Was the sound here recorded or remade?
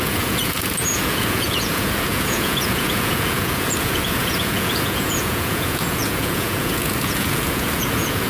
remade